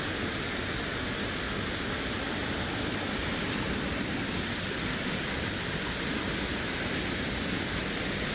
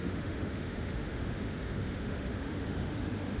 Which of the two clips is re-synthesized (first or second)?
second